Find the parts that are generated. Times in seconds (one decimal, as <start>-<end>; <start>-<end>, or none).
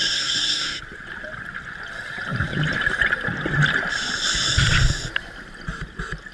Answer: 0.0-0.8